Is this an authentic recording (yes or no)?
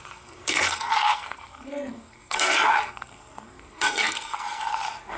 no